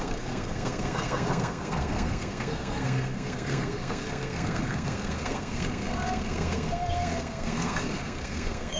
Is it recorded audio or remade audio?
remade